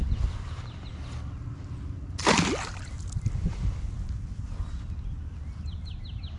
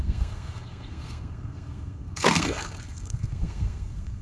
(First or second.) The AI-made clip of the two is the second